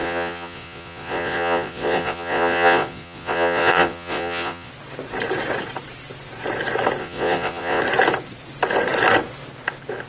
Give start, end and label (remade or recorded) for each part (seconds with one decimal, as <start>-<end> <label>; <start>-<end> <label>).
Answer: 0.0-4.7 remade; 4.7-7.0 recorded; 7.0-7.8 remade; 7.8-10.1 recorded